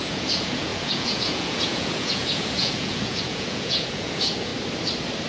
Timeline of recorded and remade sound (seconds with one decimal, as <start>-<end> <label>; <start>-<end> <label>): 0.0-4.5 remade; 4.5-5.3 recorded